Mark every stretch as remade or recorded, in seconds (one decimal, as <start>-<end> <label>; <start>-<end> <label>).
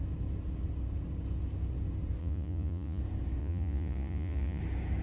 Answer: 0.0-2.2 recorded; 2.2-3.0 remade; 3.0-3.4 recorded; 3.4-4.6 remade; 4.6-5.0 recorded